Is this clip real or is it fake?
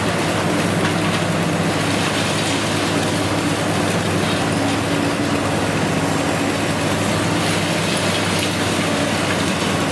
real